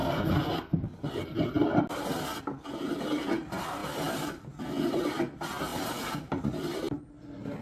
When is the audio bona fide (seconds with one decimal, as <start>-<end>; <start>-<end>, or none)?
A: 0.0-5.7; 6.6-7.6